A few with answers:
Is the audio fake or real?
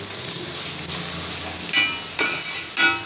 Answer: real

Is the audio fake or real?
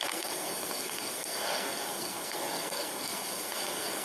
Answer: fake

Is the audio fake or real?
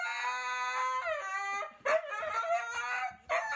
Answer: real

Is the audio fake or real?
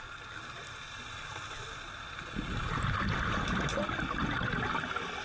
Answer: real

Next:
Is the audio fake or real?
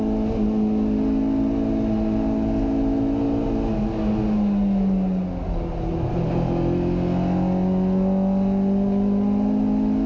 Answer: real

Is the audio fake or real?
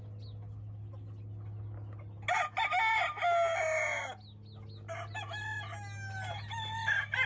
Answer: real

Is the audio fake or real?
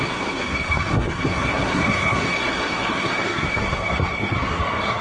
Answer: fake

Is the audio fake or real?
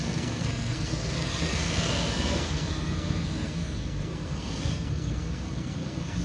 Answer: fake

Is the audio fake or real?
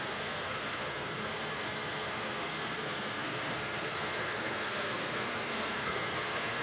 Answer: fake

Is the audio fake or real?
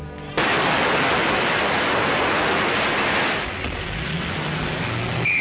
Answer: real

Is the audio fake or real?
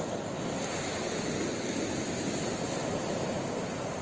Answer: real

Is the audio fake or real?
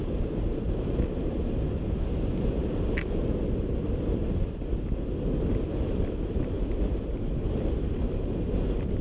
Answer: real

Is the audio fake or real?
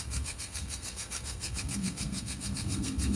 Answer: fake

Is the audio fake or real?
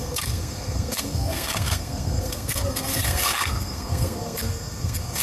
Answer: fake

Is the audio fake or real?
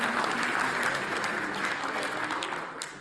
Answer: real